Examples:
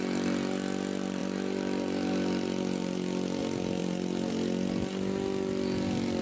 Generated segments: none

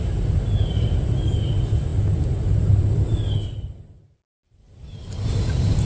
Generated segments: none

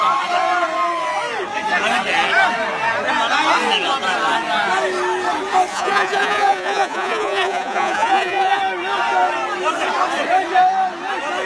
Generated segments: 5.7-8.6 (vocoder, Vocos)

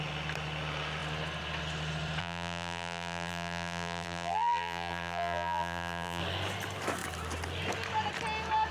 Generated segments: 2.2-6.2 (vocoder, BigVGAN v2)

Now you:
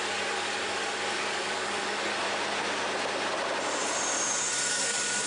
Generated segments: 0.0-2.1 (codec, DAC); 4.7-5.3

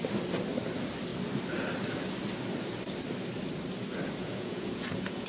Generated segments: 4.2-5.3 (vocoder, Vocos)